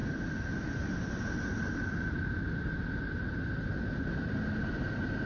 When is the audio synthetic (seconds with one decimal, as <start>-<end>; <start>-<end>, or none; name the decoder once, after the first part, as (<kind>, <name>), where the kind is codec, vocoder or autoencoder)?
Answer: none